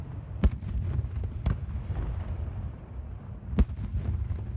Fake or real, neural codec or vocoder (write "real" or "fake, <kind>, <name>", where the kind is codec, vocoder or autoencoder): real